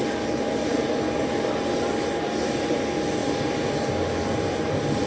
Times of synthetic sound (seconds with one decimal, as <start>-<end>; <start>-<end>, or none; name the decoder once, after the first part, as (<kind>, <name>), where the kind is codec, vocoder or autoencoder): none